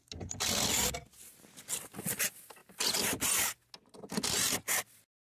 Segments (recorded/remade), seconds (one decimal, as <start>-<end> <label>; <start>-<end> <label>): 0.0-5.4 recorded